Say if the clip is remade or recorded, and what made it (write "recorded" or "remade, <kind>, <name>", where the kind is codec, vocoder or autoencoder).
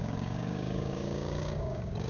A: remade, codec, DAC